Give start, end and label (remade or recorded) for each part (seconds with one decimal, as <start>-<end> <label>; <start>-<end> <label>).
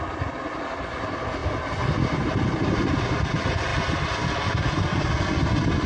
0.0-5.9 recorded